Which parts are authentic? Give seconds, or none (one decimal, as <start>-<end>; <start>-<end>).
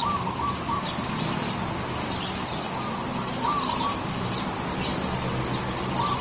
1.6-3.9; 4.7-6.2